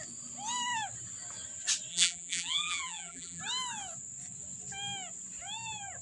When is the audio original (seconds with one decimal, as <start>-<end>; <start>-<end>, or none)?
0.0-1.9; 3.4-6.0